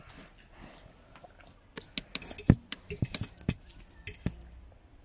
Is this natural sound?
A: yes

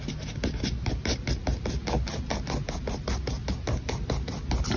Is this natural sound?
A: yes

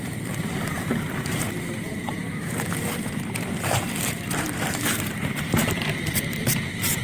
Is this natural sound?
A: no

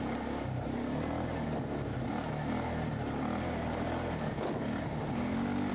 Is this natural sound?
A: yes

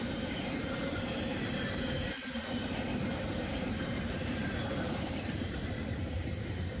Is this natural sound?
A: no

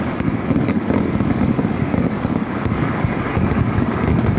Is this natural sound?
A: no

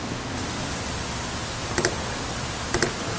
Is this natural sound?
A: yes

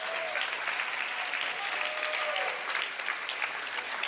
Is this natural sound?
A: yes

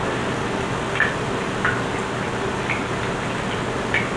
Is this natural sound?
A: yes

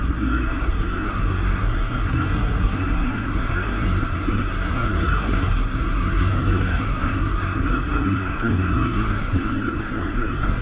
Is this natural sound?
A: no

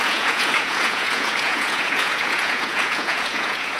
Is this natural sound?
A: no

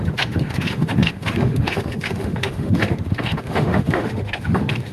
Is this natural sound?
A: no